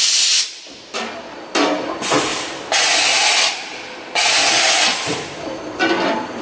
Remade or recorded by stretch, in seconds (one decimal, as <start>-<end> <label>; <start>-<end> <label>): 0.0-2.3 recorded; 2.3-2.8 remade; 2.8-3.2 recorded; 3.2-4.8 remade; 4.8-6.4 recorded